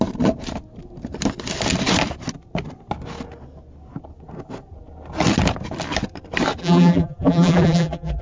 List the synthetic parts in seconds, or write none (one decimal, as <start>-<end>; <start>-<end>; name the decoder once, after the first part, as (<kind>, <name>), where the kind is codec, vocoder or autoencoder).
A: 6.6-8.2 (vocoder, BigVGAN v2)